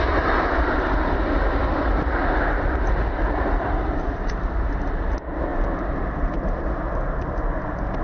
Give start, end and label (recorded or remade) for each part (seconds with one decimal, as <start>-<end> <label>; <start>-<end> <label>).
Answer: 0.0-1.6 recorded; 1.6-4.7 remade; 4.7-8.0 recorded